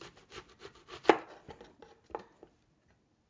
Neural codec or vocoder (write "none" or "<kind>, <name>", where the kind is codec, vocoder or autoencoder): none